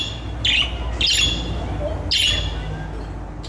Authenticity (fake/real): real